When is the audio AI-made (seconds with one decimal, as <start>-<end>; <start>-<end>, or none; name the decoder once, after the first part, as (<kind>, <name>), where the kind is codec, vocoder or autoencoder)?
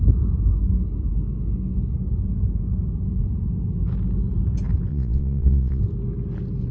4.9-5.8 (vocoder, Vocos)